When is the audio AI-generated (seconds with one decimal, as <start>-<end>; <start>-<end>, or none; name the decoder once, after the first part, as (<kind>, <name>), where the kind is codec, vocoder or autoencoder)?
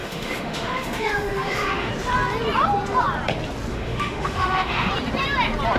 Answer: 0.0-1.9 (autoencoder, DAC-VAE); 3.7-4.9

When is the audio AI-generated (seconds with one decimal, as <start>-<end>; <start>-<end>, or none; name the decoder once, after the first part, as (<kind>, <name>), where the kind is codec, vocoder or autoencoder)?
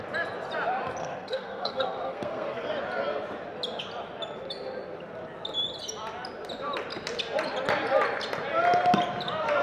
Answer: 1.0-2.7 (codec, SNAC)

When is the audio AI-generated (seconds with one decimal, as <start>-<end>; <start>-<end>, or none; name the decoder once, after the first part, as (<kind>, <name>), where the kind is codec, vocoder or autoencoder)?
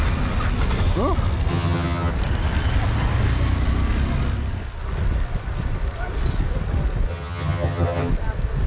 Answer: 1.5-2.1 (vocoder, HiFi-GAN); 7.1-8.1